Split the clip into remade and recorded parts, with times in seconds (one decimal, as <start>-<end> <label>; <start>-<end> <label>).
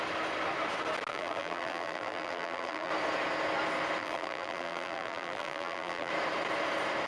0.0-1.1 recorded; 1.1-2.9 remade; 2.9-4.0 recorded; 4.0-6.1 remade; 6.1-7.1 recorded